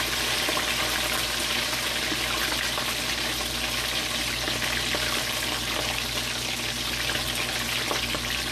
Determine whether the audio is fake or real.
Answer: real